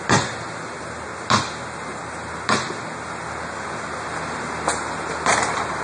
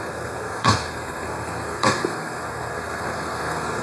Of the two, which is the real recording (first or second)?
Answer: first